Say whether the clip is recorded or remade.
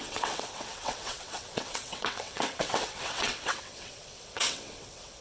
remade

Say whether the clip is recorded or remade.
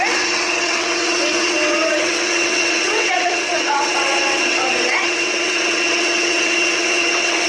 remade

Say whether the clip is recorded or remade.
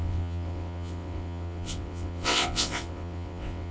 remade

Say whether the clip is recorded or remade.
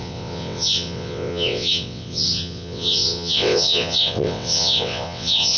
remade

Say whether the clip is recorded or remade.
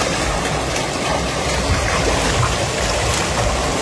recorded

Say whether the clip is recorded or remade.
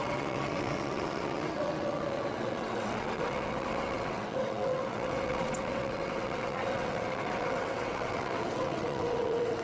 remade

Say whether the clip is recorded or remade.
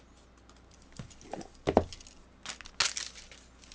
recorded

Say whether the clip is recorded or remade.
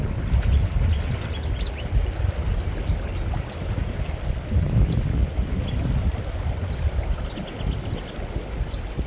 recorded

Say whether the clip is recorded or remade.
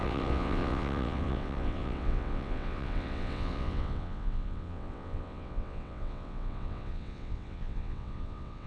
remade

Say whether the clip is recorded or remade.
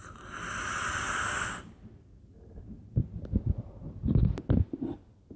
recorded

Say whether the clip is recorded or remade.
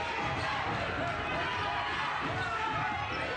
recorded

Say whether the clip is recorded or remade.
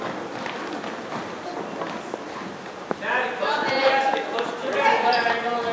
recorded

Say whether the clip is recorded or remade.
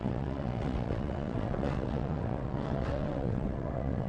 remade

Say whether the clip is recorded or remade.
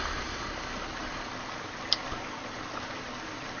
recorded